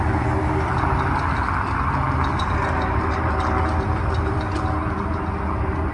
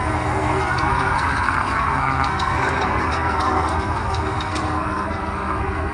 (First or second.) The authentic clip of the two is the first